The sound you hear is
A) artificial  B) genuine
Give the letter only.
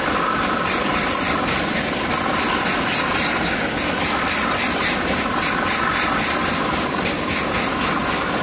B